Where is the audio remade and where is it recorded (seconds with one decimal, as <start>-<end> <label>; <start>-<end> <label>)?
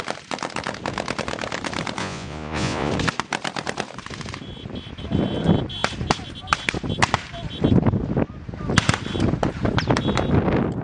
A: 0.0-2.0 recorded; 2.0-2.9 remade; 2.9-10.8 recorded